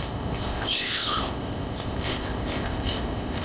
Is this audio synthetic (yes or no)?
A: yes